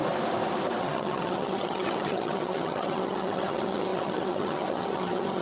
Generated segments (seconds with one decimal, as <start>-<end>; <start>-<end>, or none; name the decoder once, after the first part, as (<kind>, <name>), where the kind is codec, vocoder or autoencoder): 0.8-5.4 (vocoder, HiFi-GAN)